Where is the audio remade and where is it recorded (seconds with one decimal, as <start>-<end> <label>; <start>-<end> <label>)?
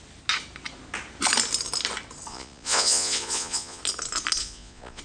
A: 0.0-2.3 recorded; 2.3-3.8 remade; 3.8-4.4 recorded; 4.4-5.0 remade